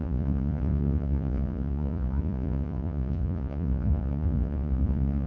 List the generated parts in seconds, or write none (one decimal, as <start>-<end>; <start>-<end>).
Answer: 0.0-5.3